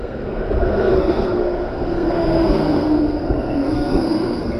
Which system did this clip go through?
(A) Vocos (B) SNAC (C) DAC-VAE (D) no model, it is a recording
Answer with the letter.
B